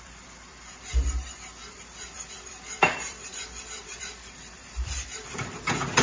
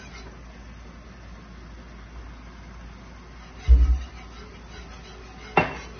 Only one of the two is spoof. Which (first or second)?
first